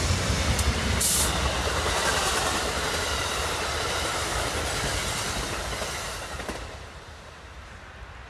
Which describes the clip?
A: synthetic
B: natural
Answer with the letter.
B